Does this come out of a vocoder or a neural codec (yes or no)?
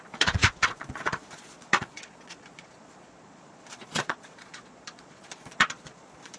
yes